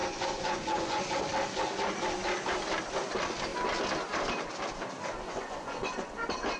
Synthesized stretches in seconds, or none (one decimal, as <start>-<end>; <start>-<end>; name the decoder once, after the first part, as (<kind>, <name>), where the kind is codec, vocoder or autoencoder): 0.0-1.1 (vocoder, Vocos); 5.3-6.1